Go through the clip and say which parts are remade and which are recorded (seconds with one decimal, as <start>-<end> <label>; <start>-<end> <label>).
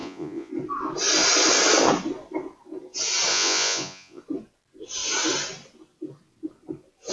0.0-0.5 remade; 0.5-3.3 recorded; 3.3-4.2 remade; 4.2-7.1 recorded